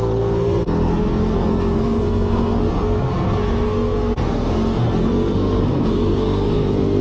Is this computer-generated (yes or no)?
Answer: yes